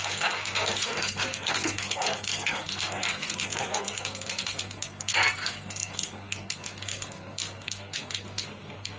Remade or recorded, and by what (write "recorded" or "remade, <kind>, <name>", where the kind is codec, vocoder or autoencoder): remade, codec, SNAC